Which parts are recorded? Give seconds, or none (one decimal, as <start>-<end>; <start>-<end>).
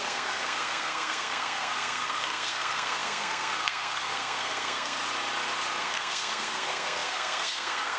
5.0-5.8